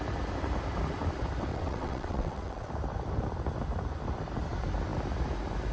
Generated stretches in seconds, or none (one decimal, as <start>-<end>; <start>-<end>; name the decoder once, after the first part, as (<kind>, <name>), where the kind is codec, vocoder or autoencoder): 1.5-2.7 (vocoder, WaveNeXt)